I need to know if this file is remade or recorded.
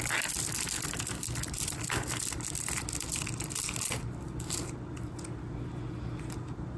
recorded